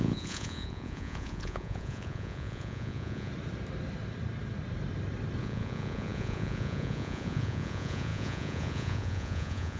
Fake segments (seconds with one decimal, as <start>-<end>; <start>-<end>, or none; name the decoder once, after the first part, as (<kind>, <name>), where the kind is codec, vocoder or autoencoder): 0.0-3.3 (vocoder, Vocos); 5.4-9.8